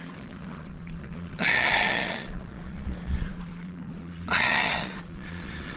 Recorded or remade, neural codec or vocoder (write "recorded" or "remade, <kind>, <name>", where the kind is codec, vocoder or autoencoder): remade, vocoder, Vocos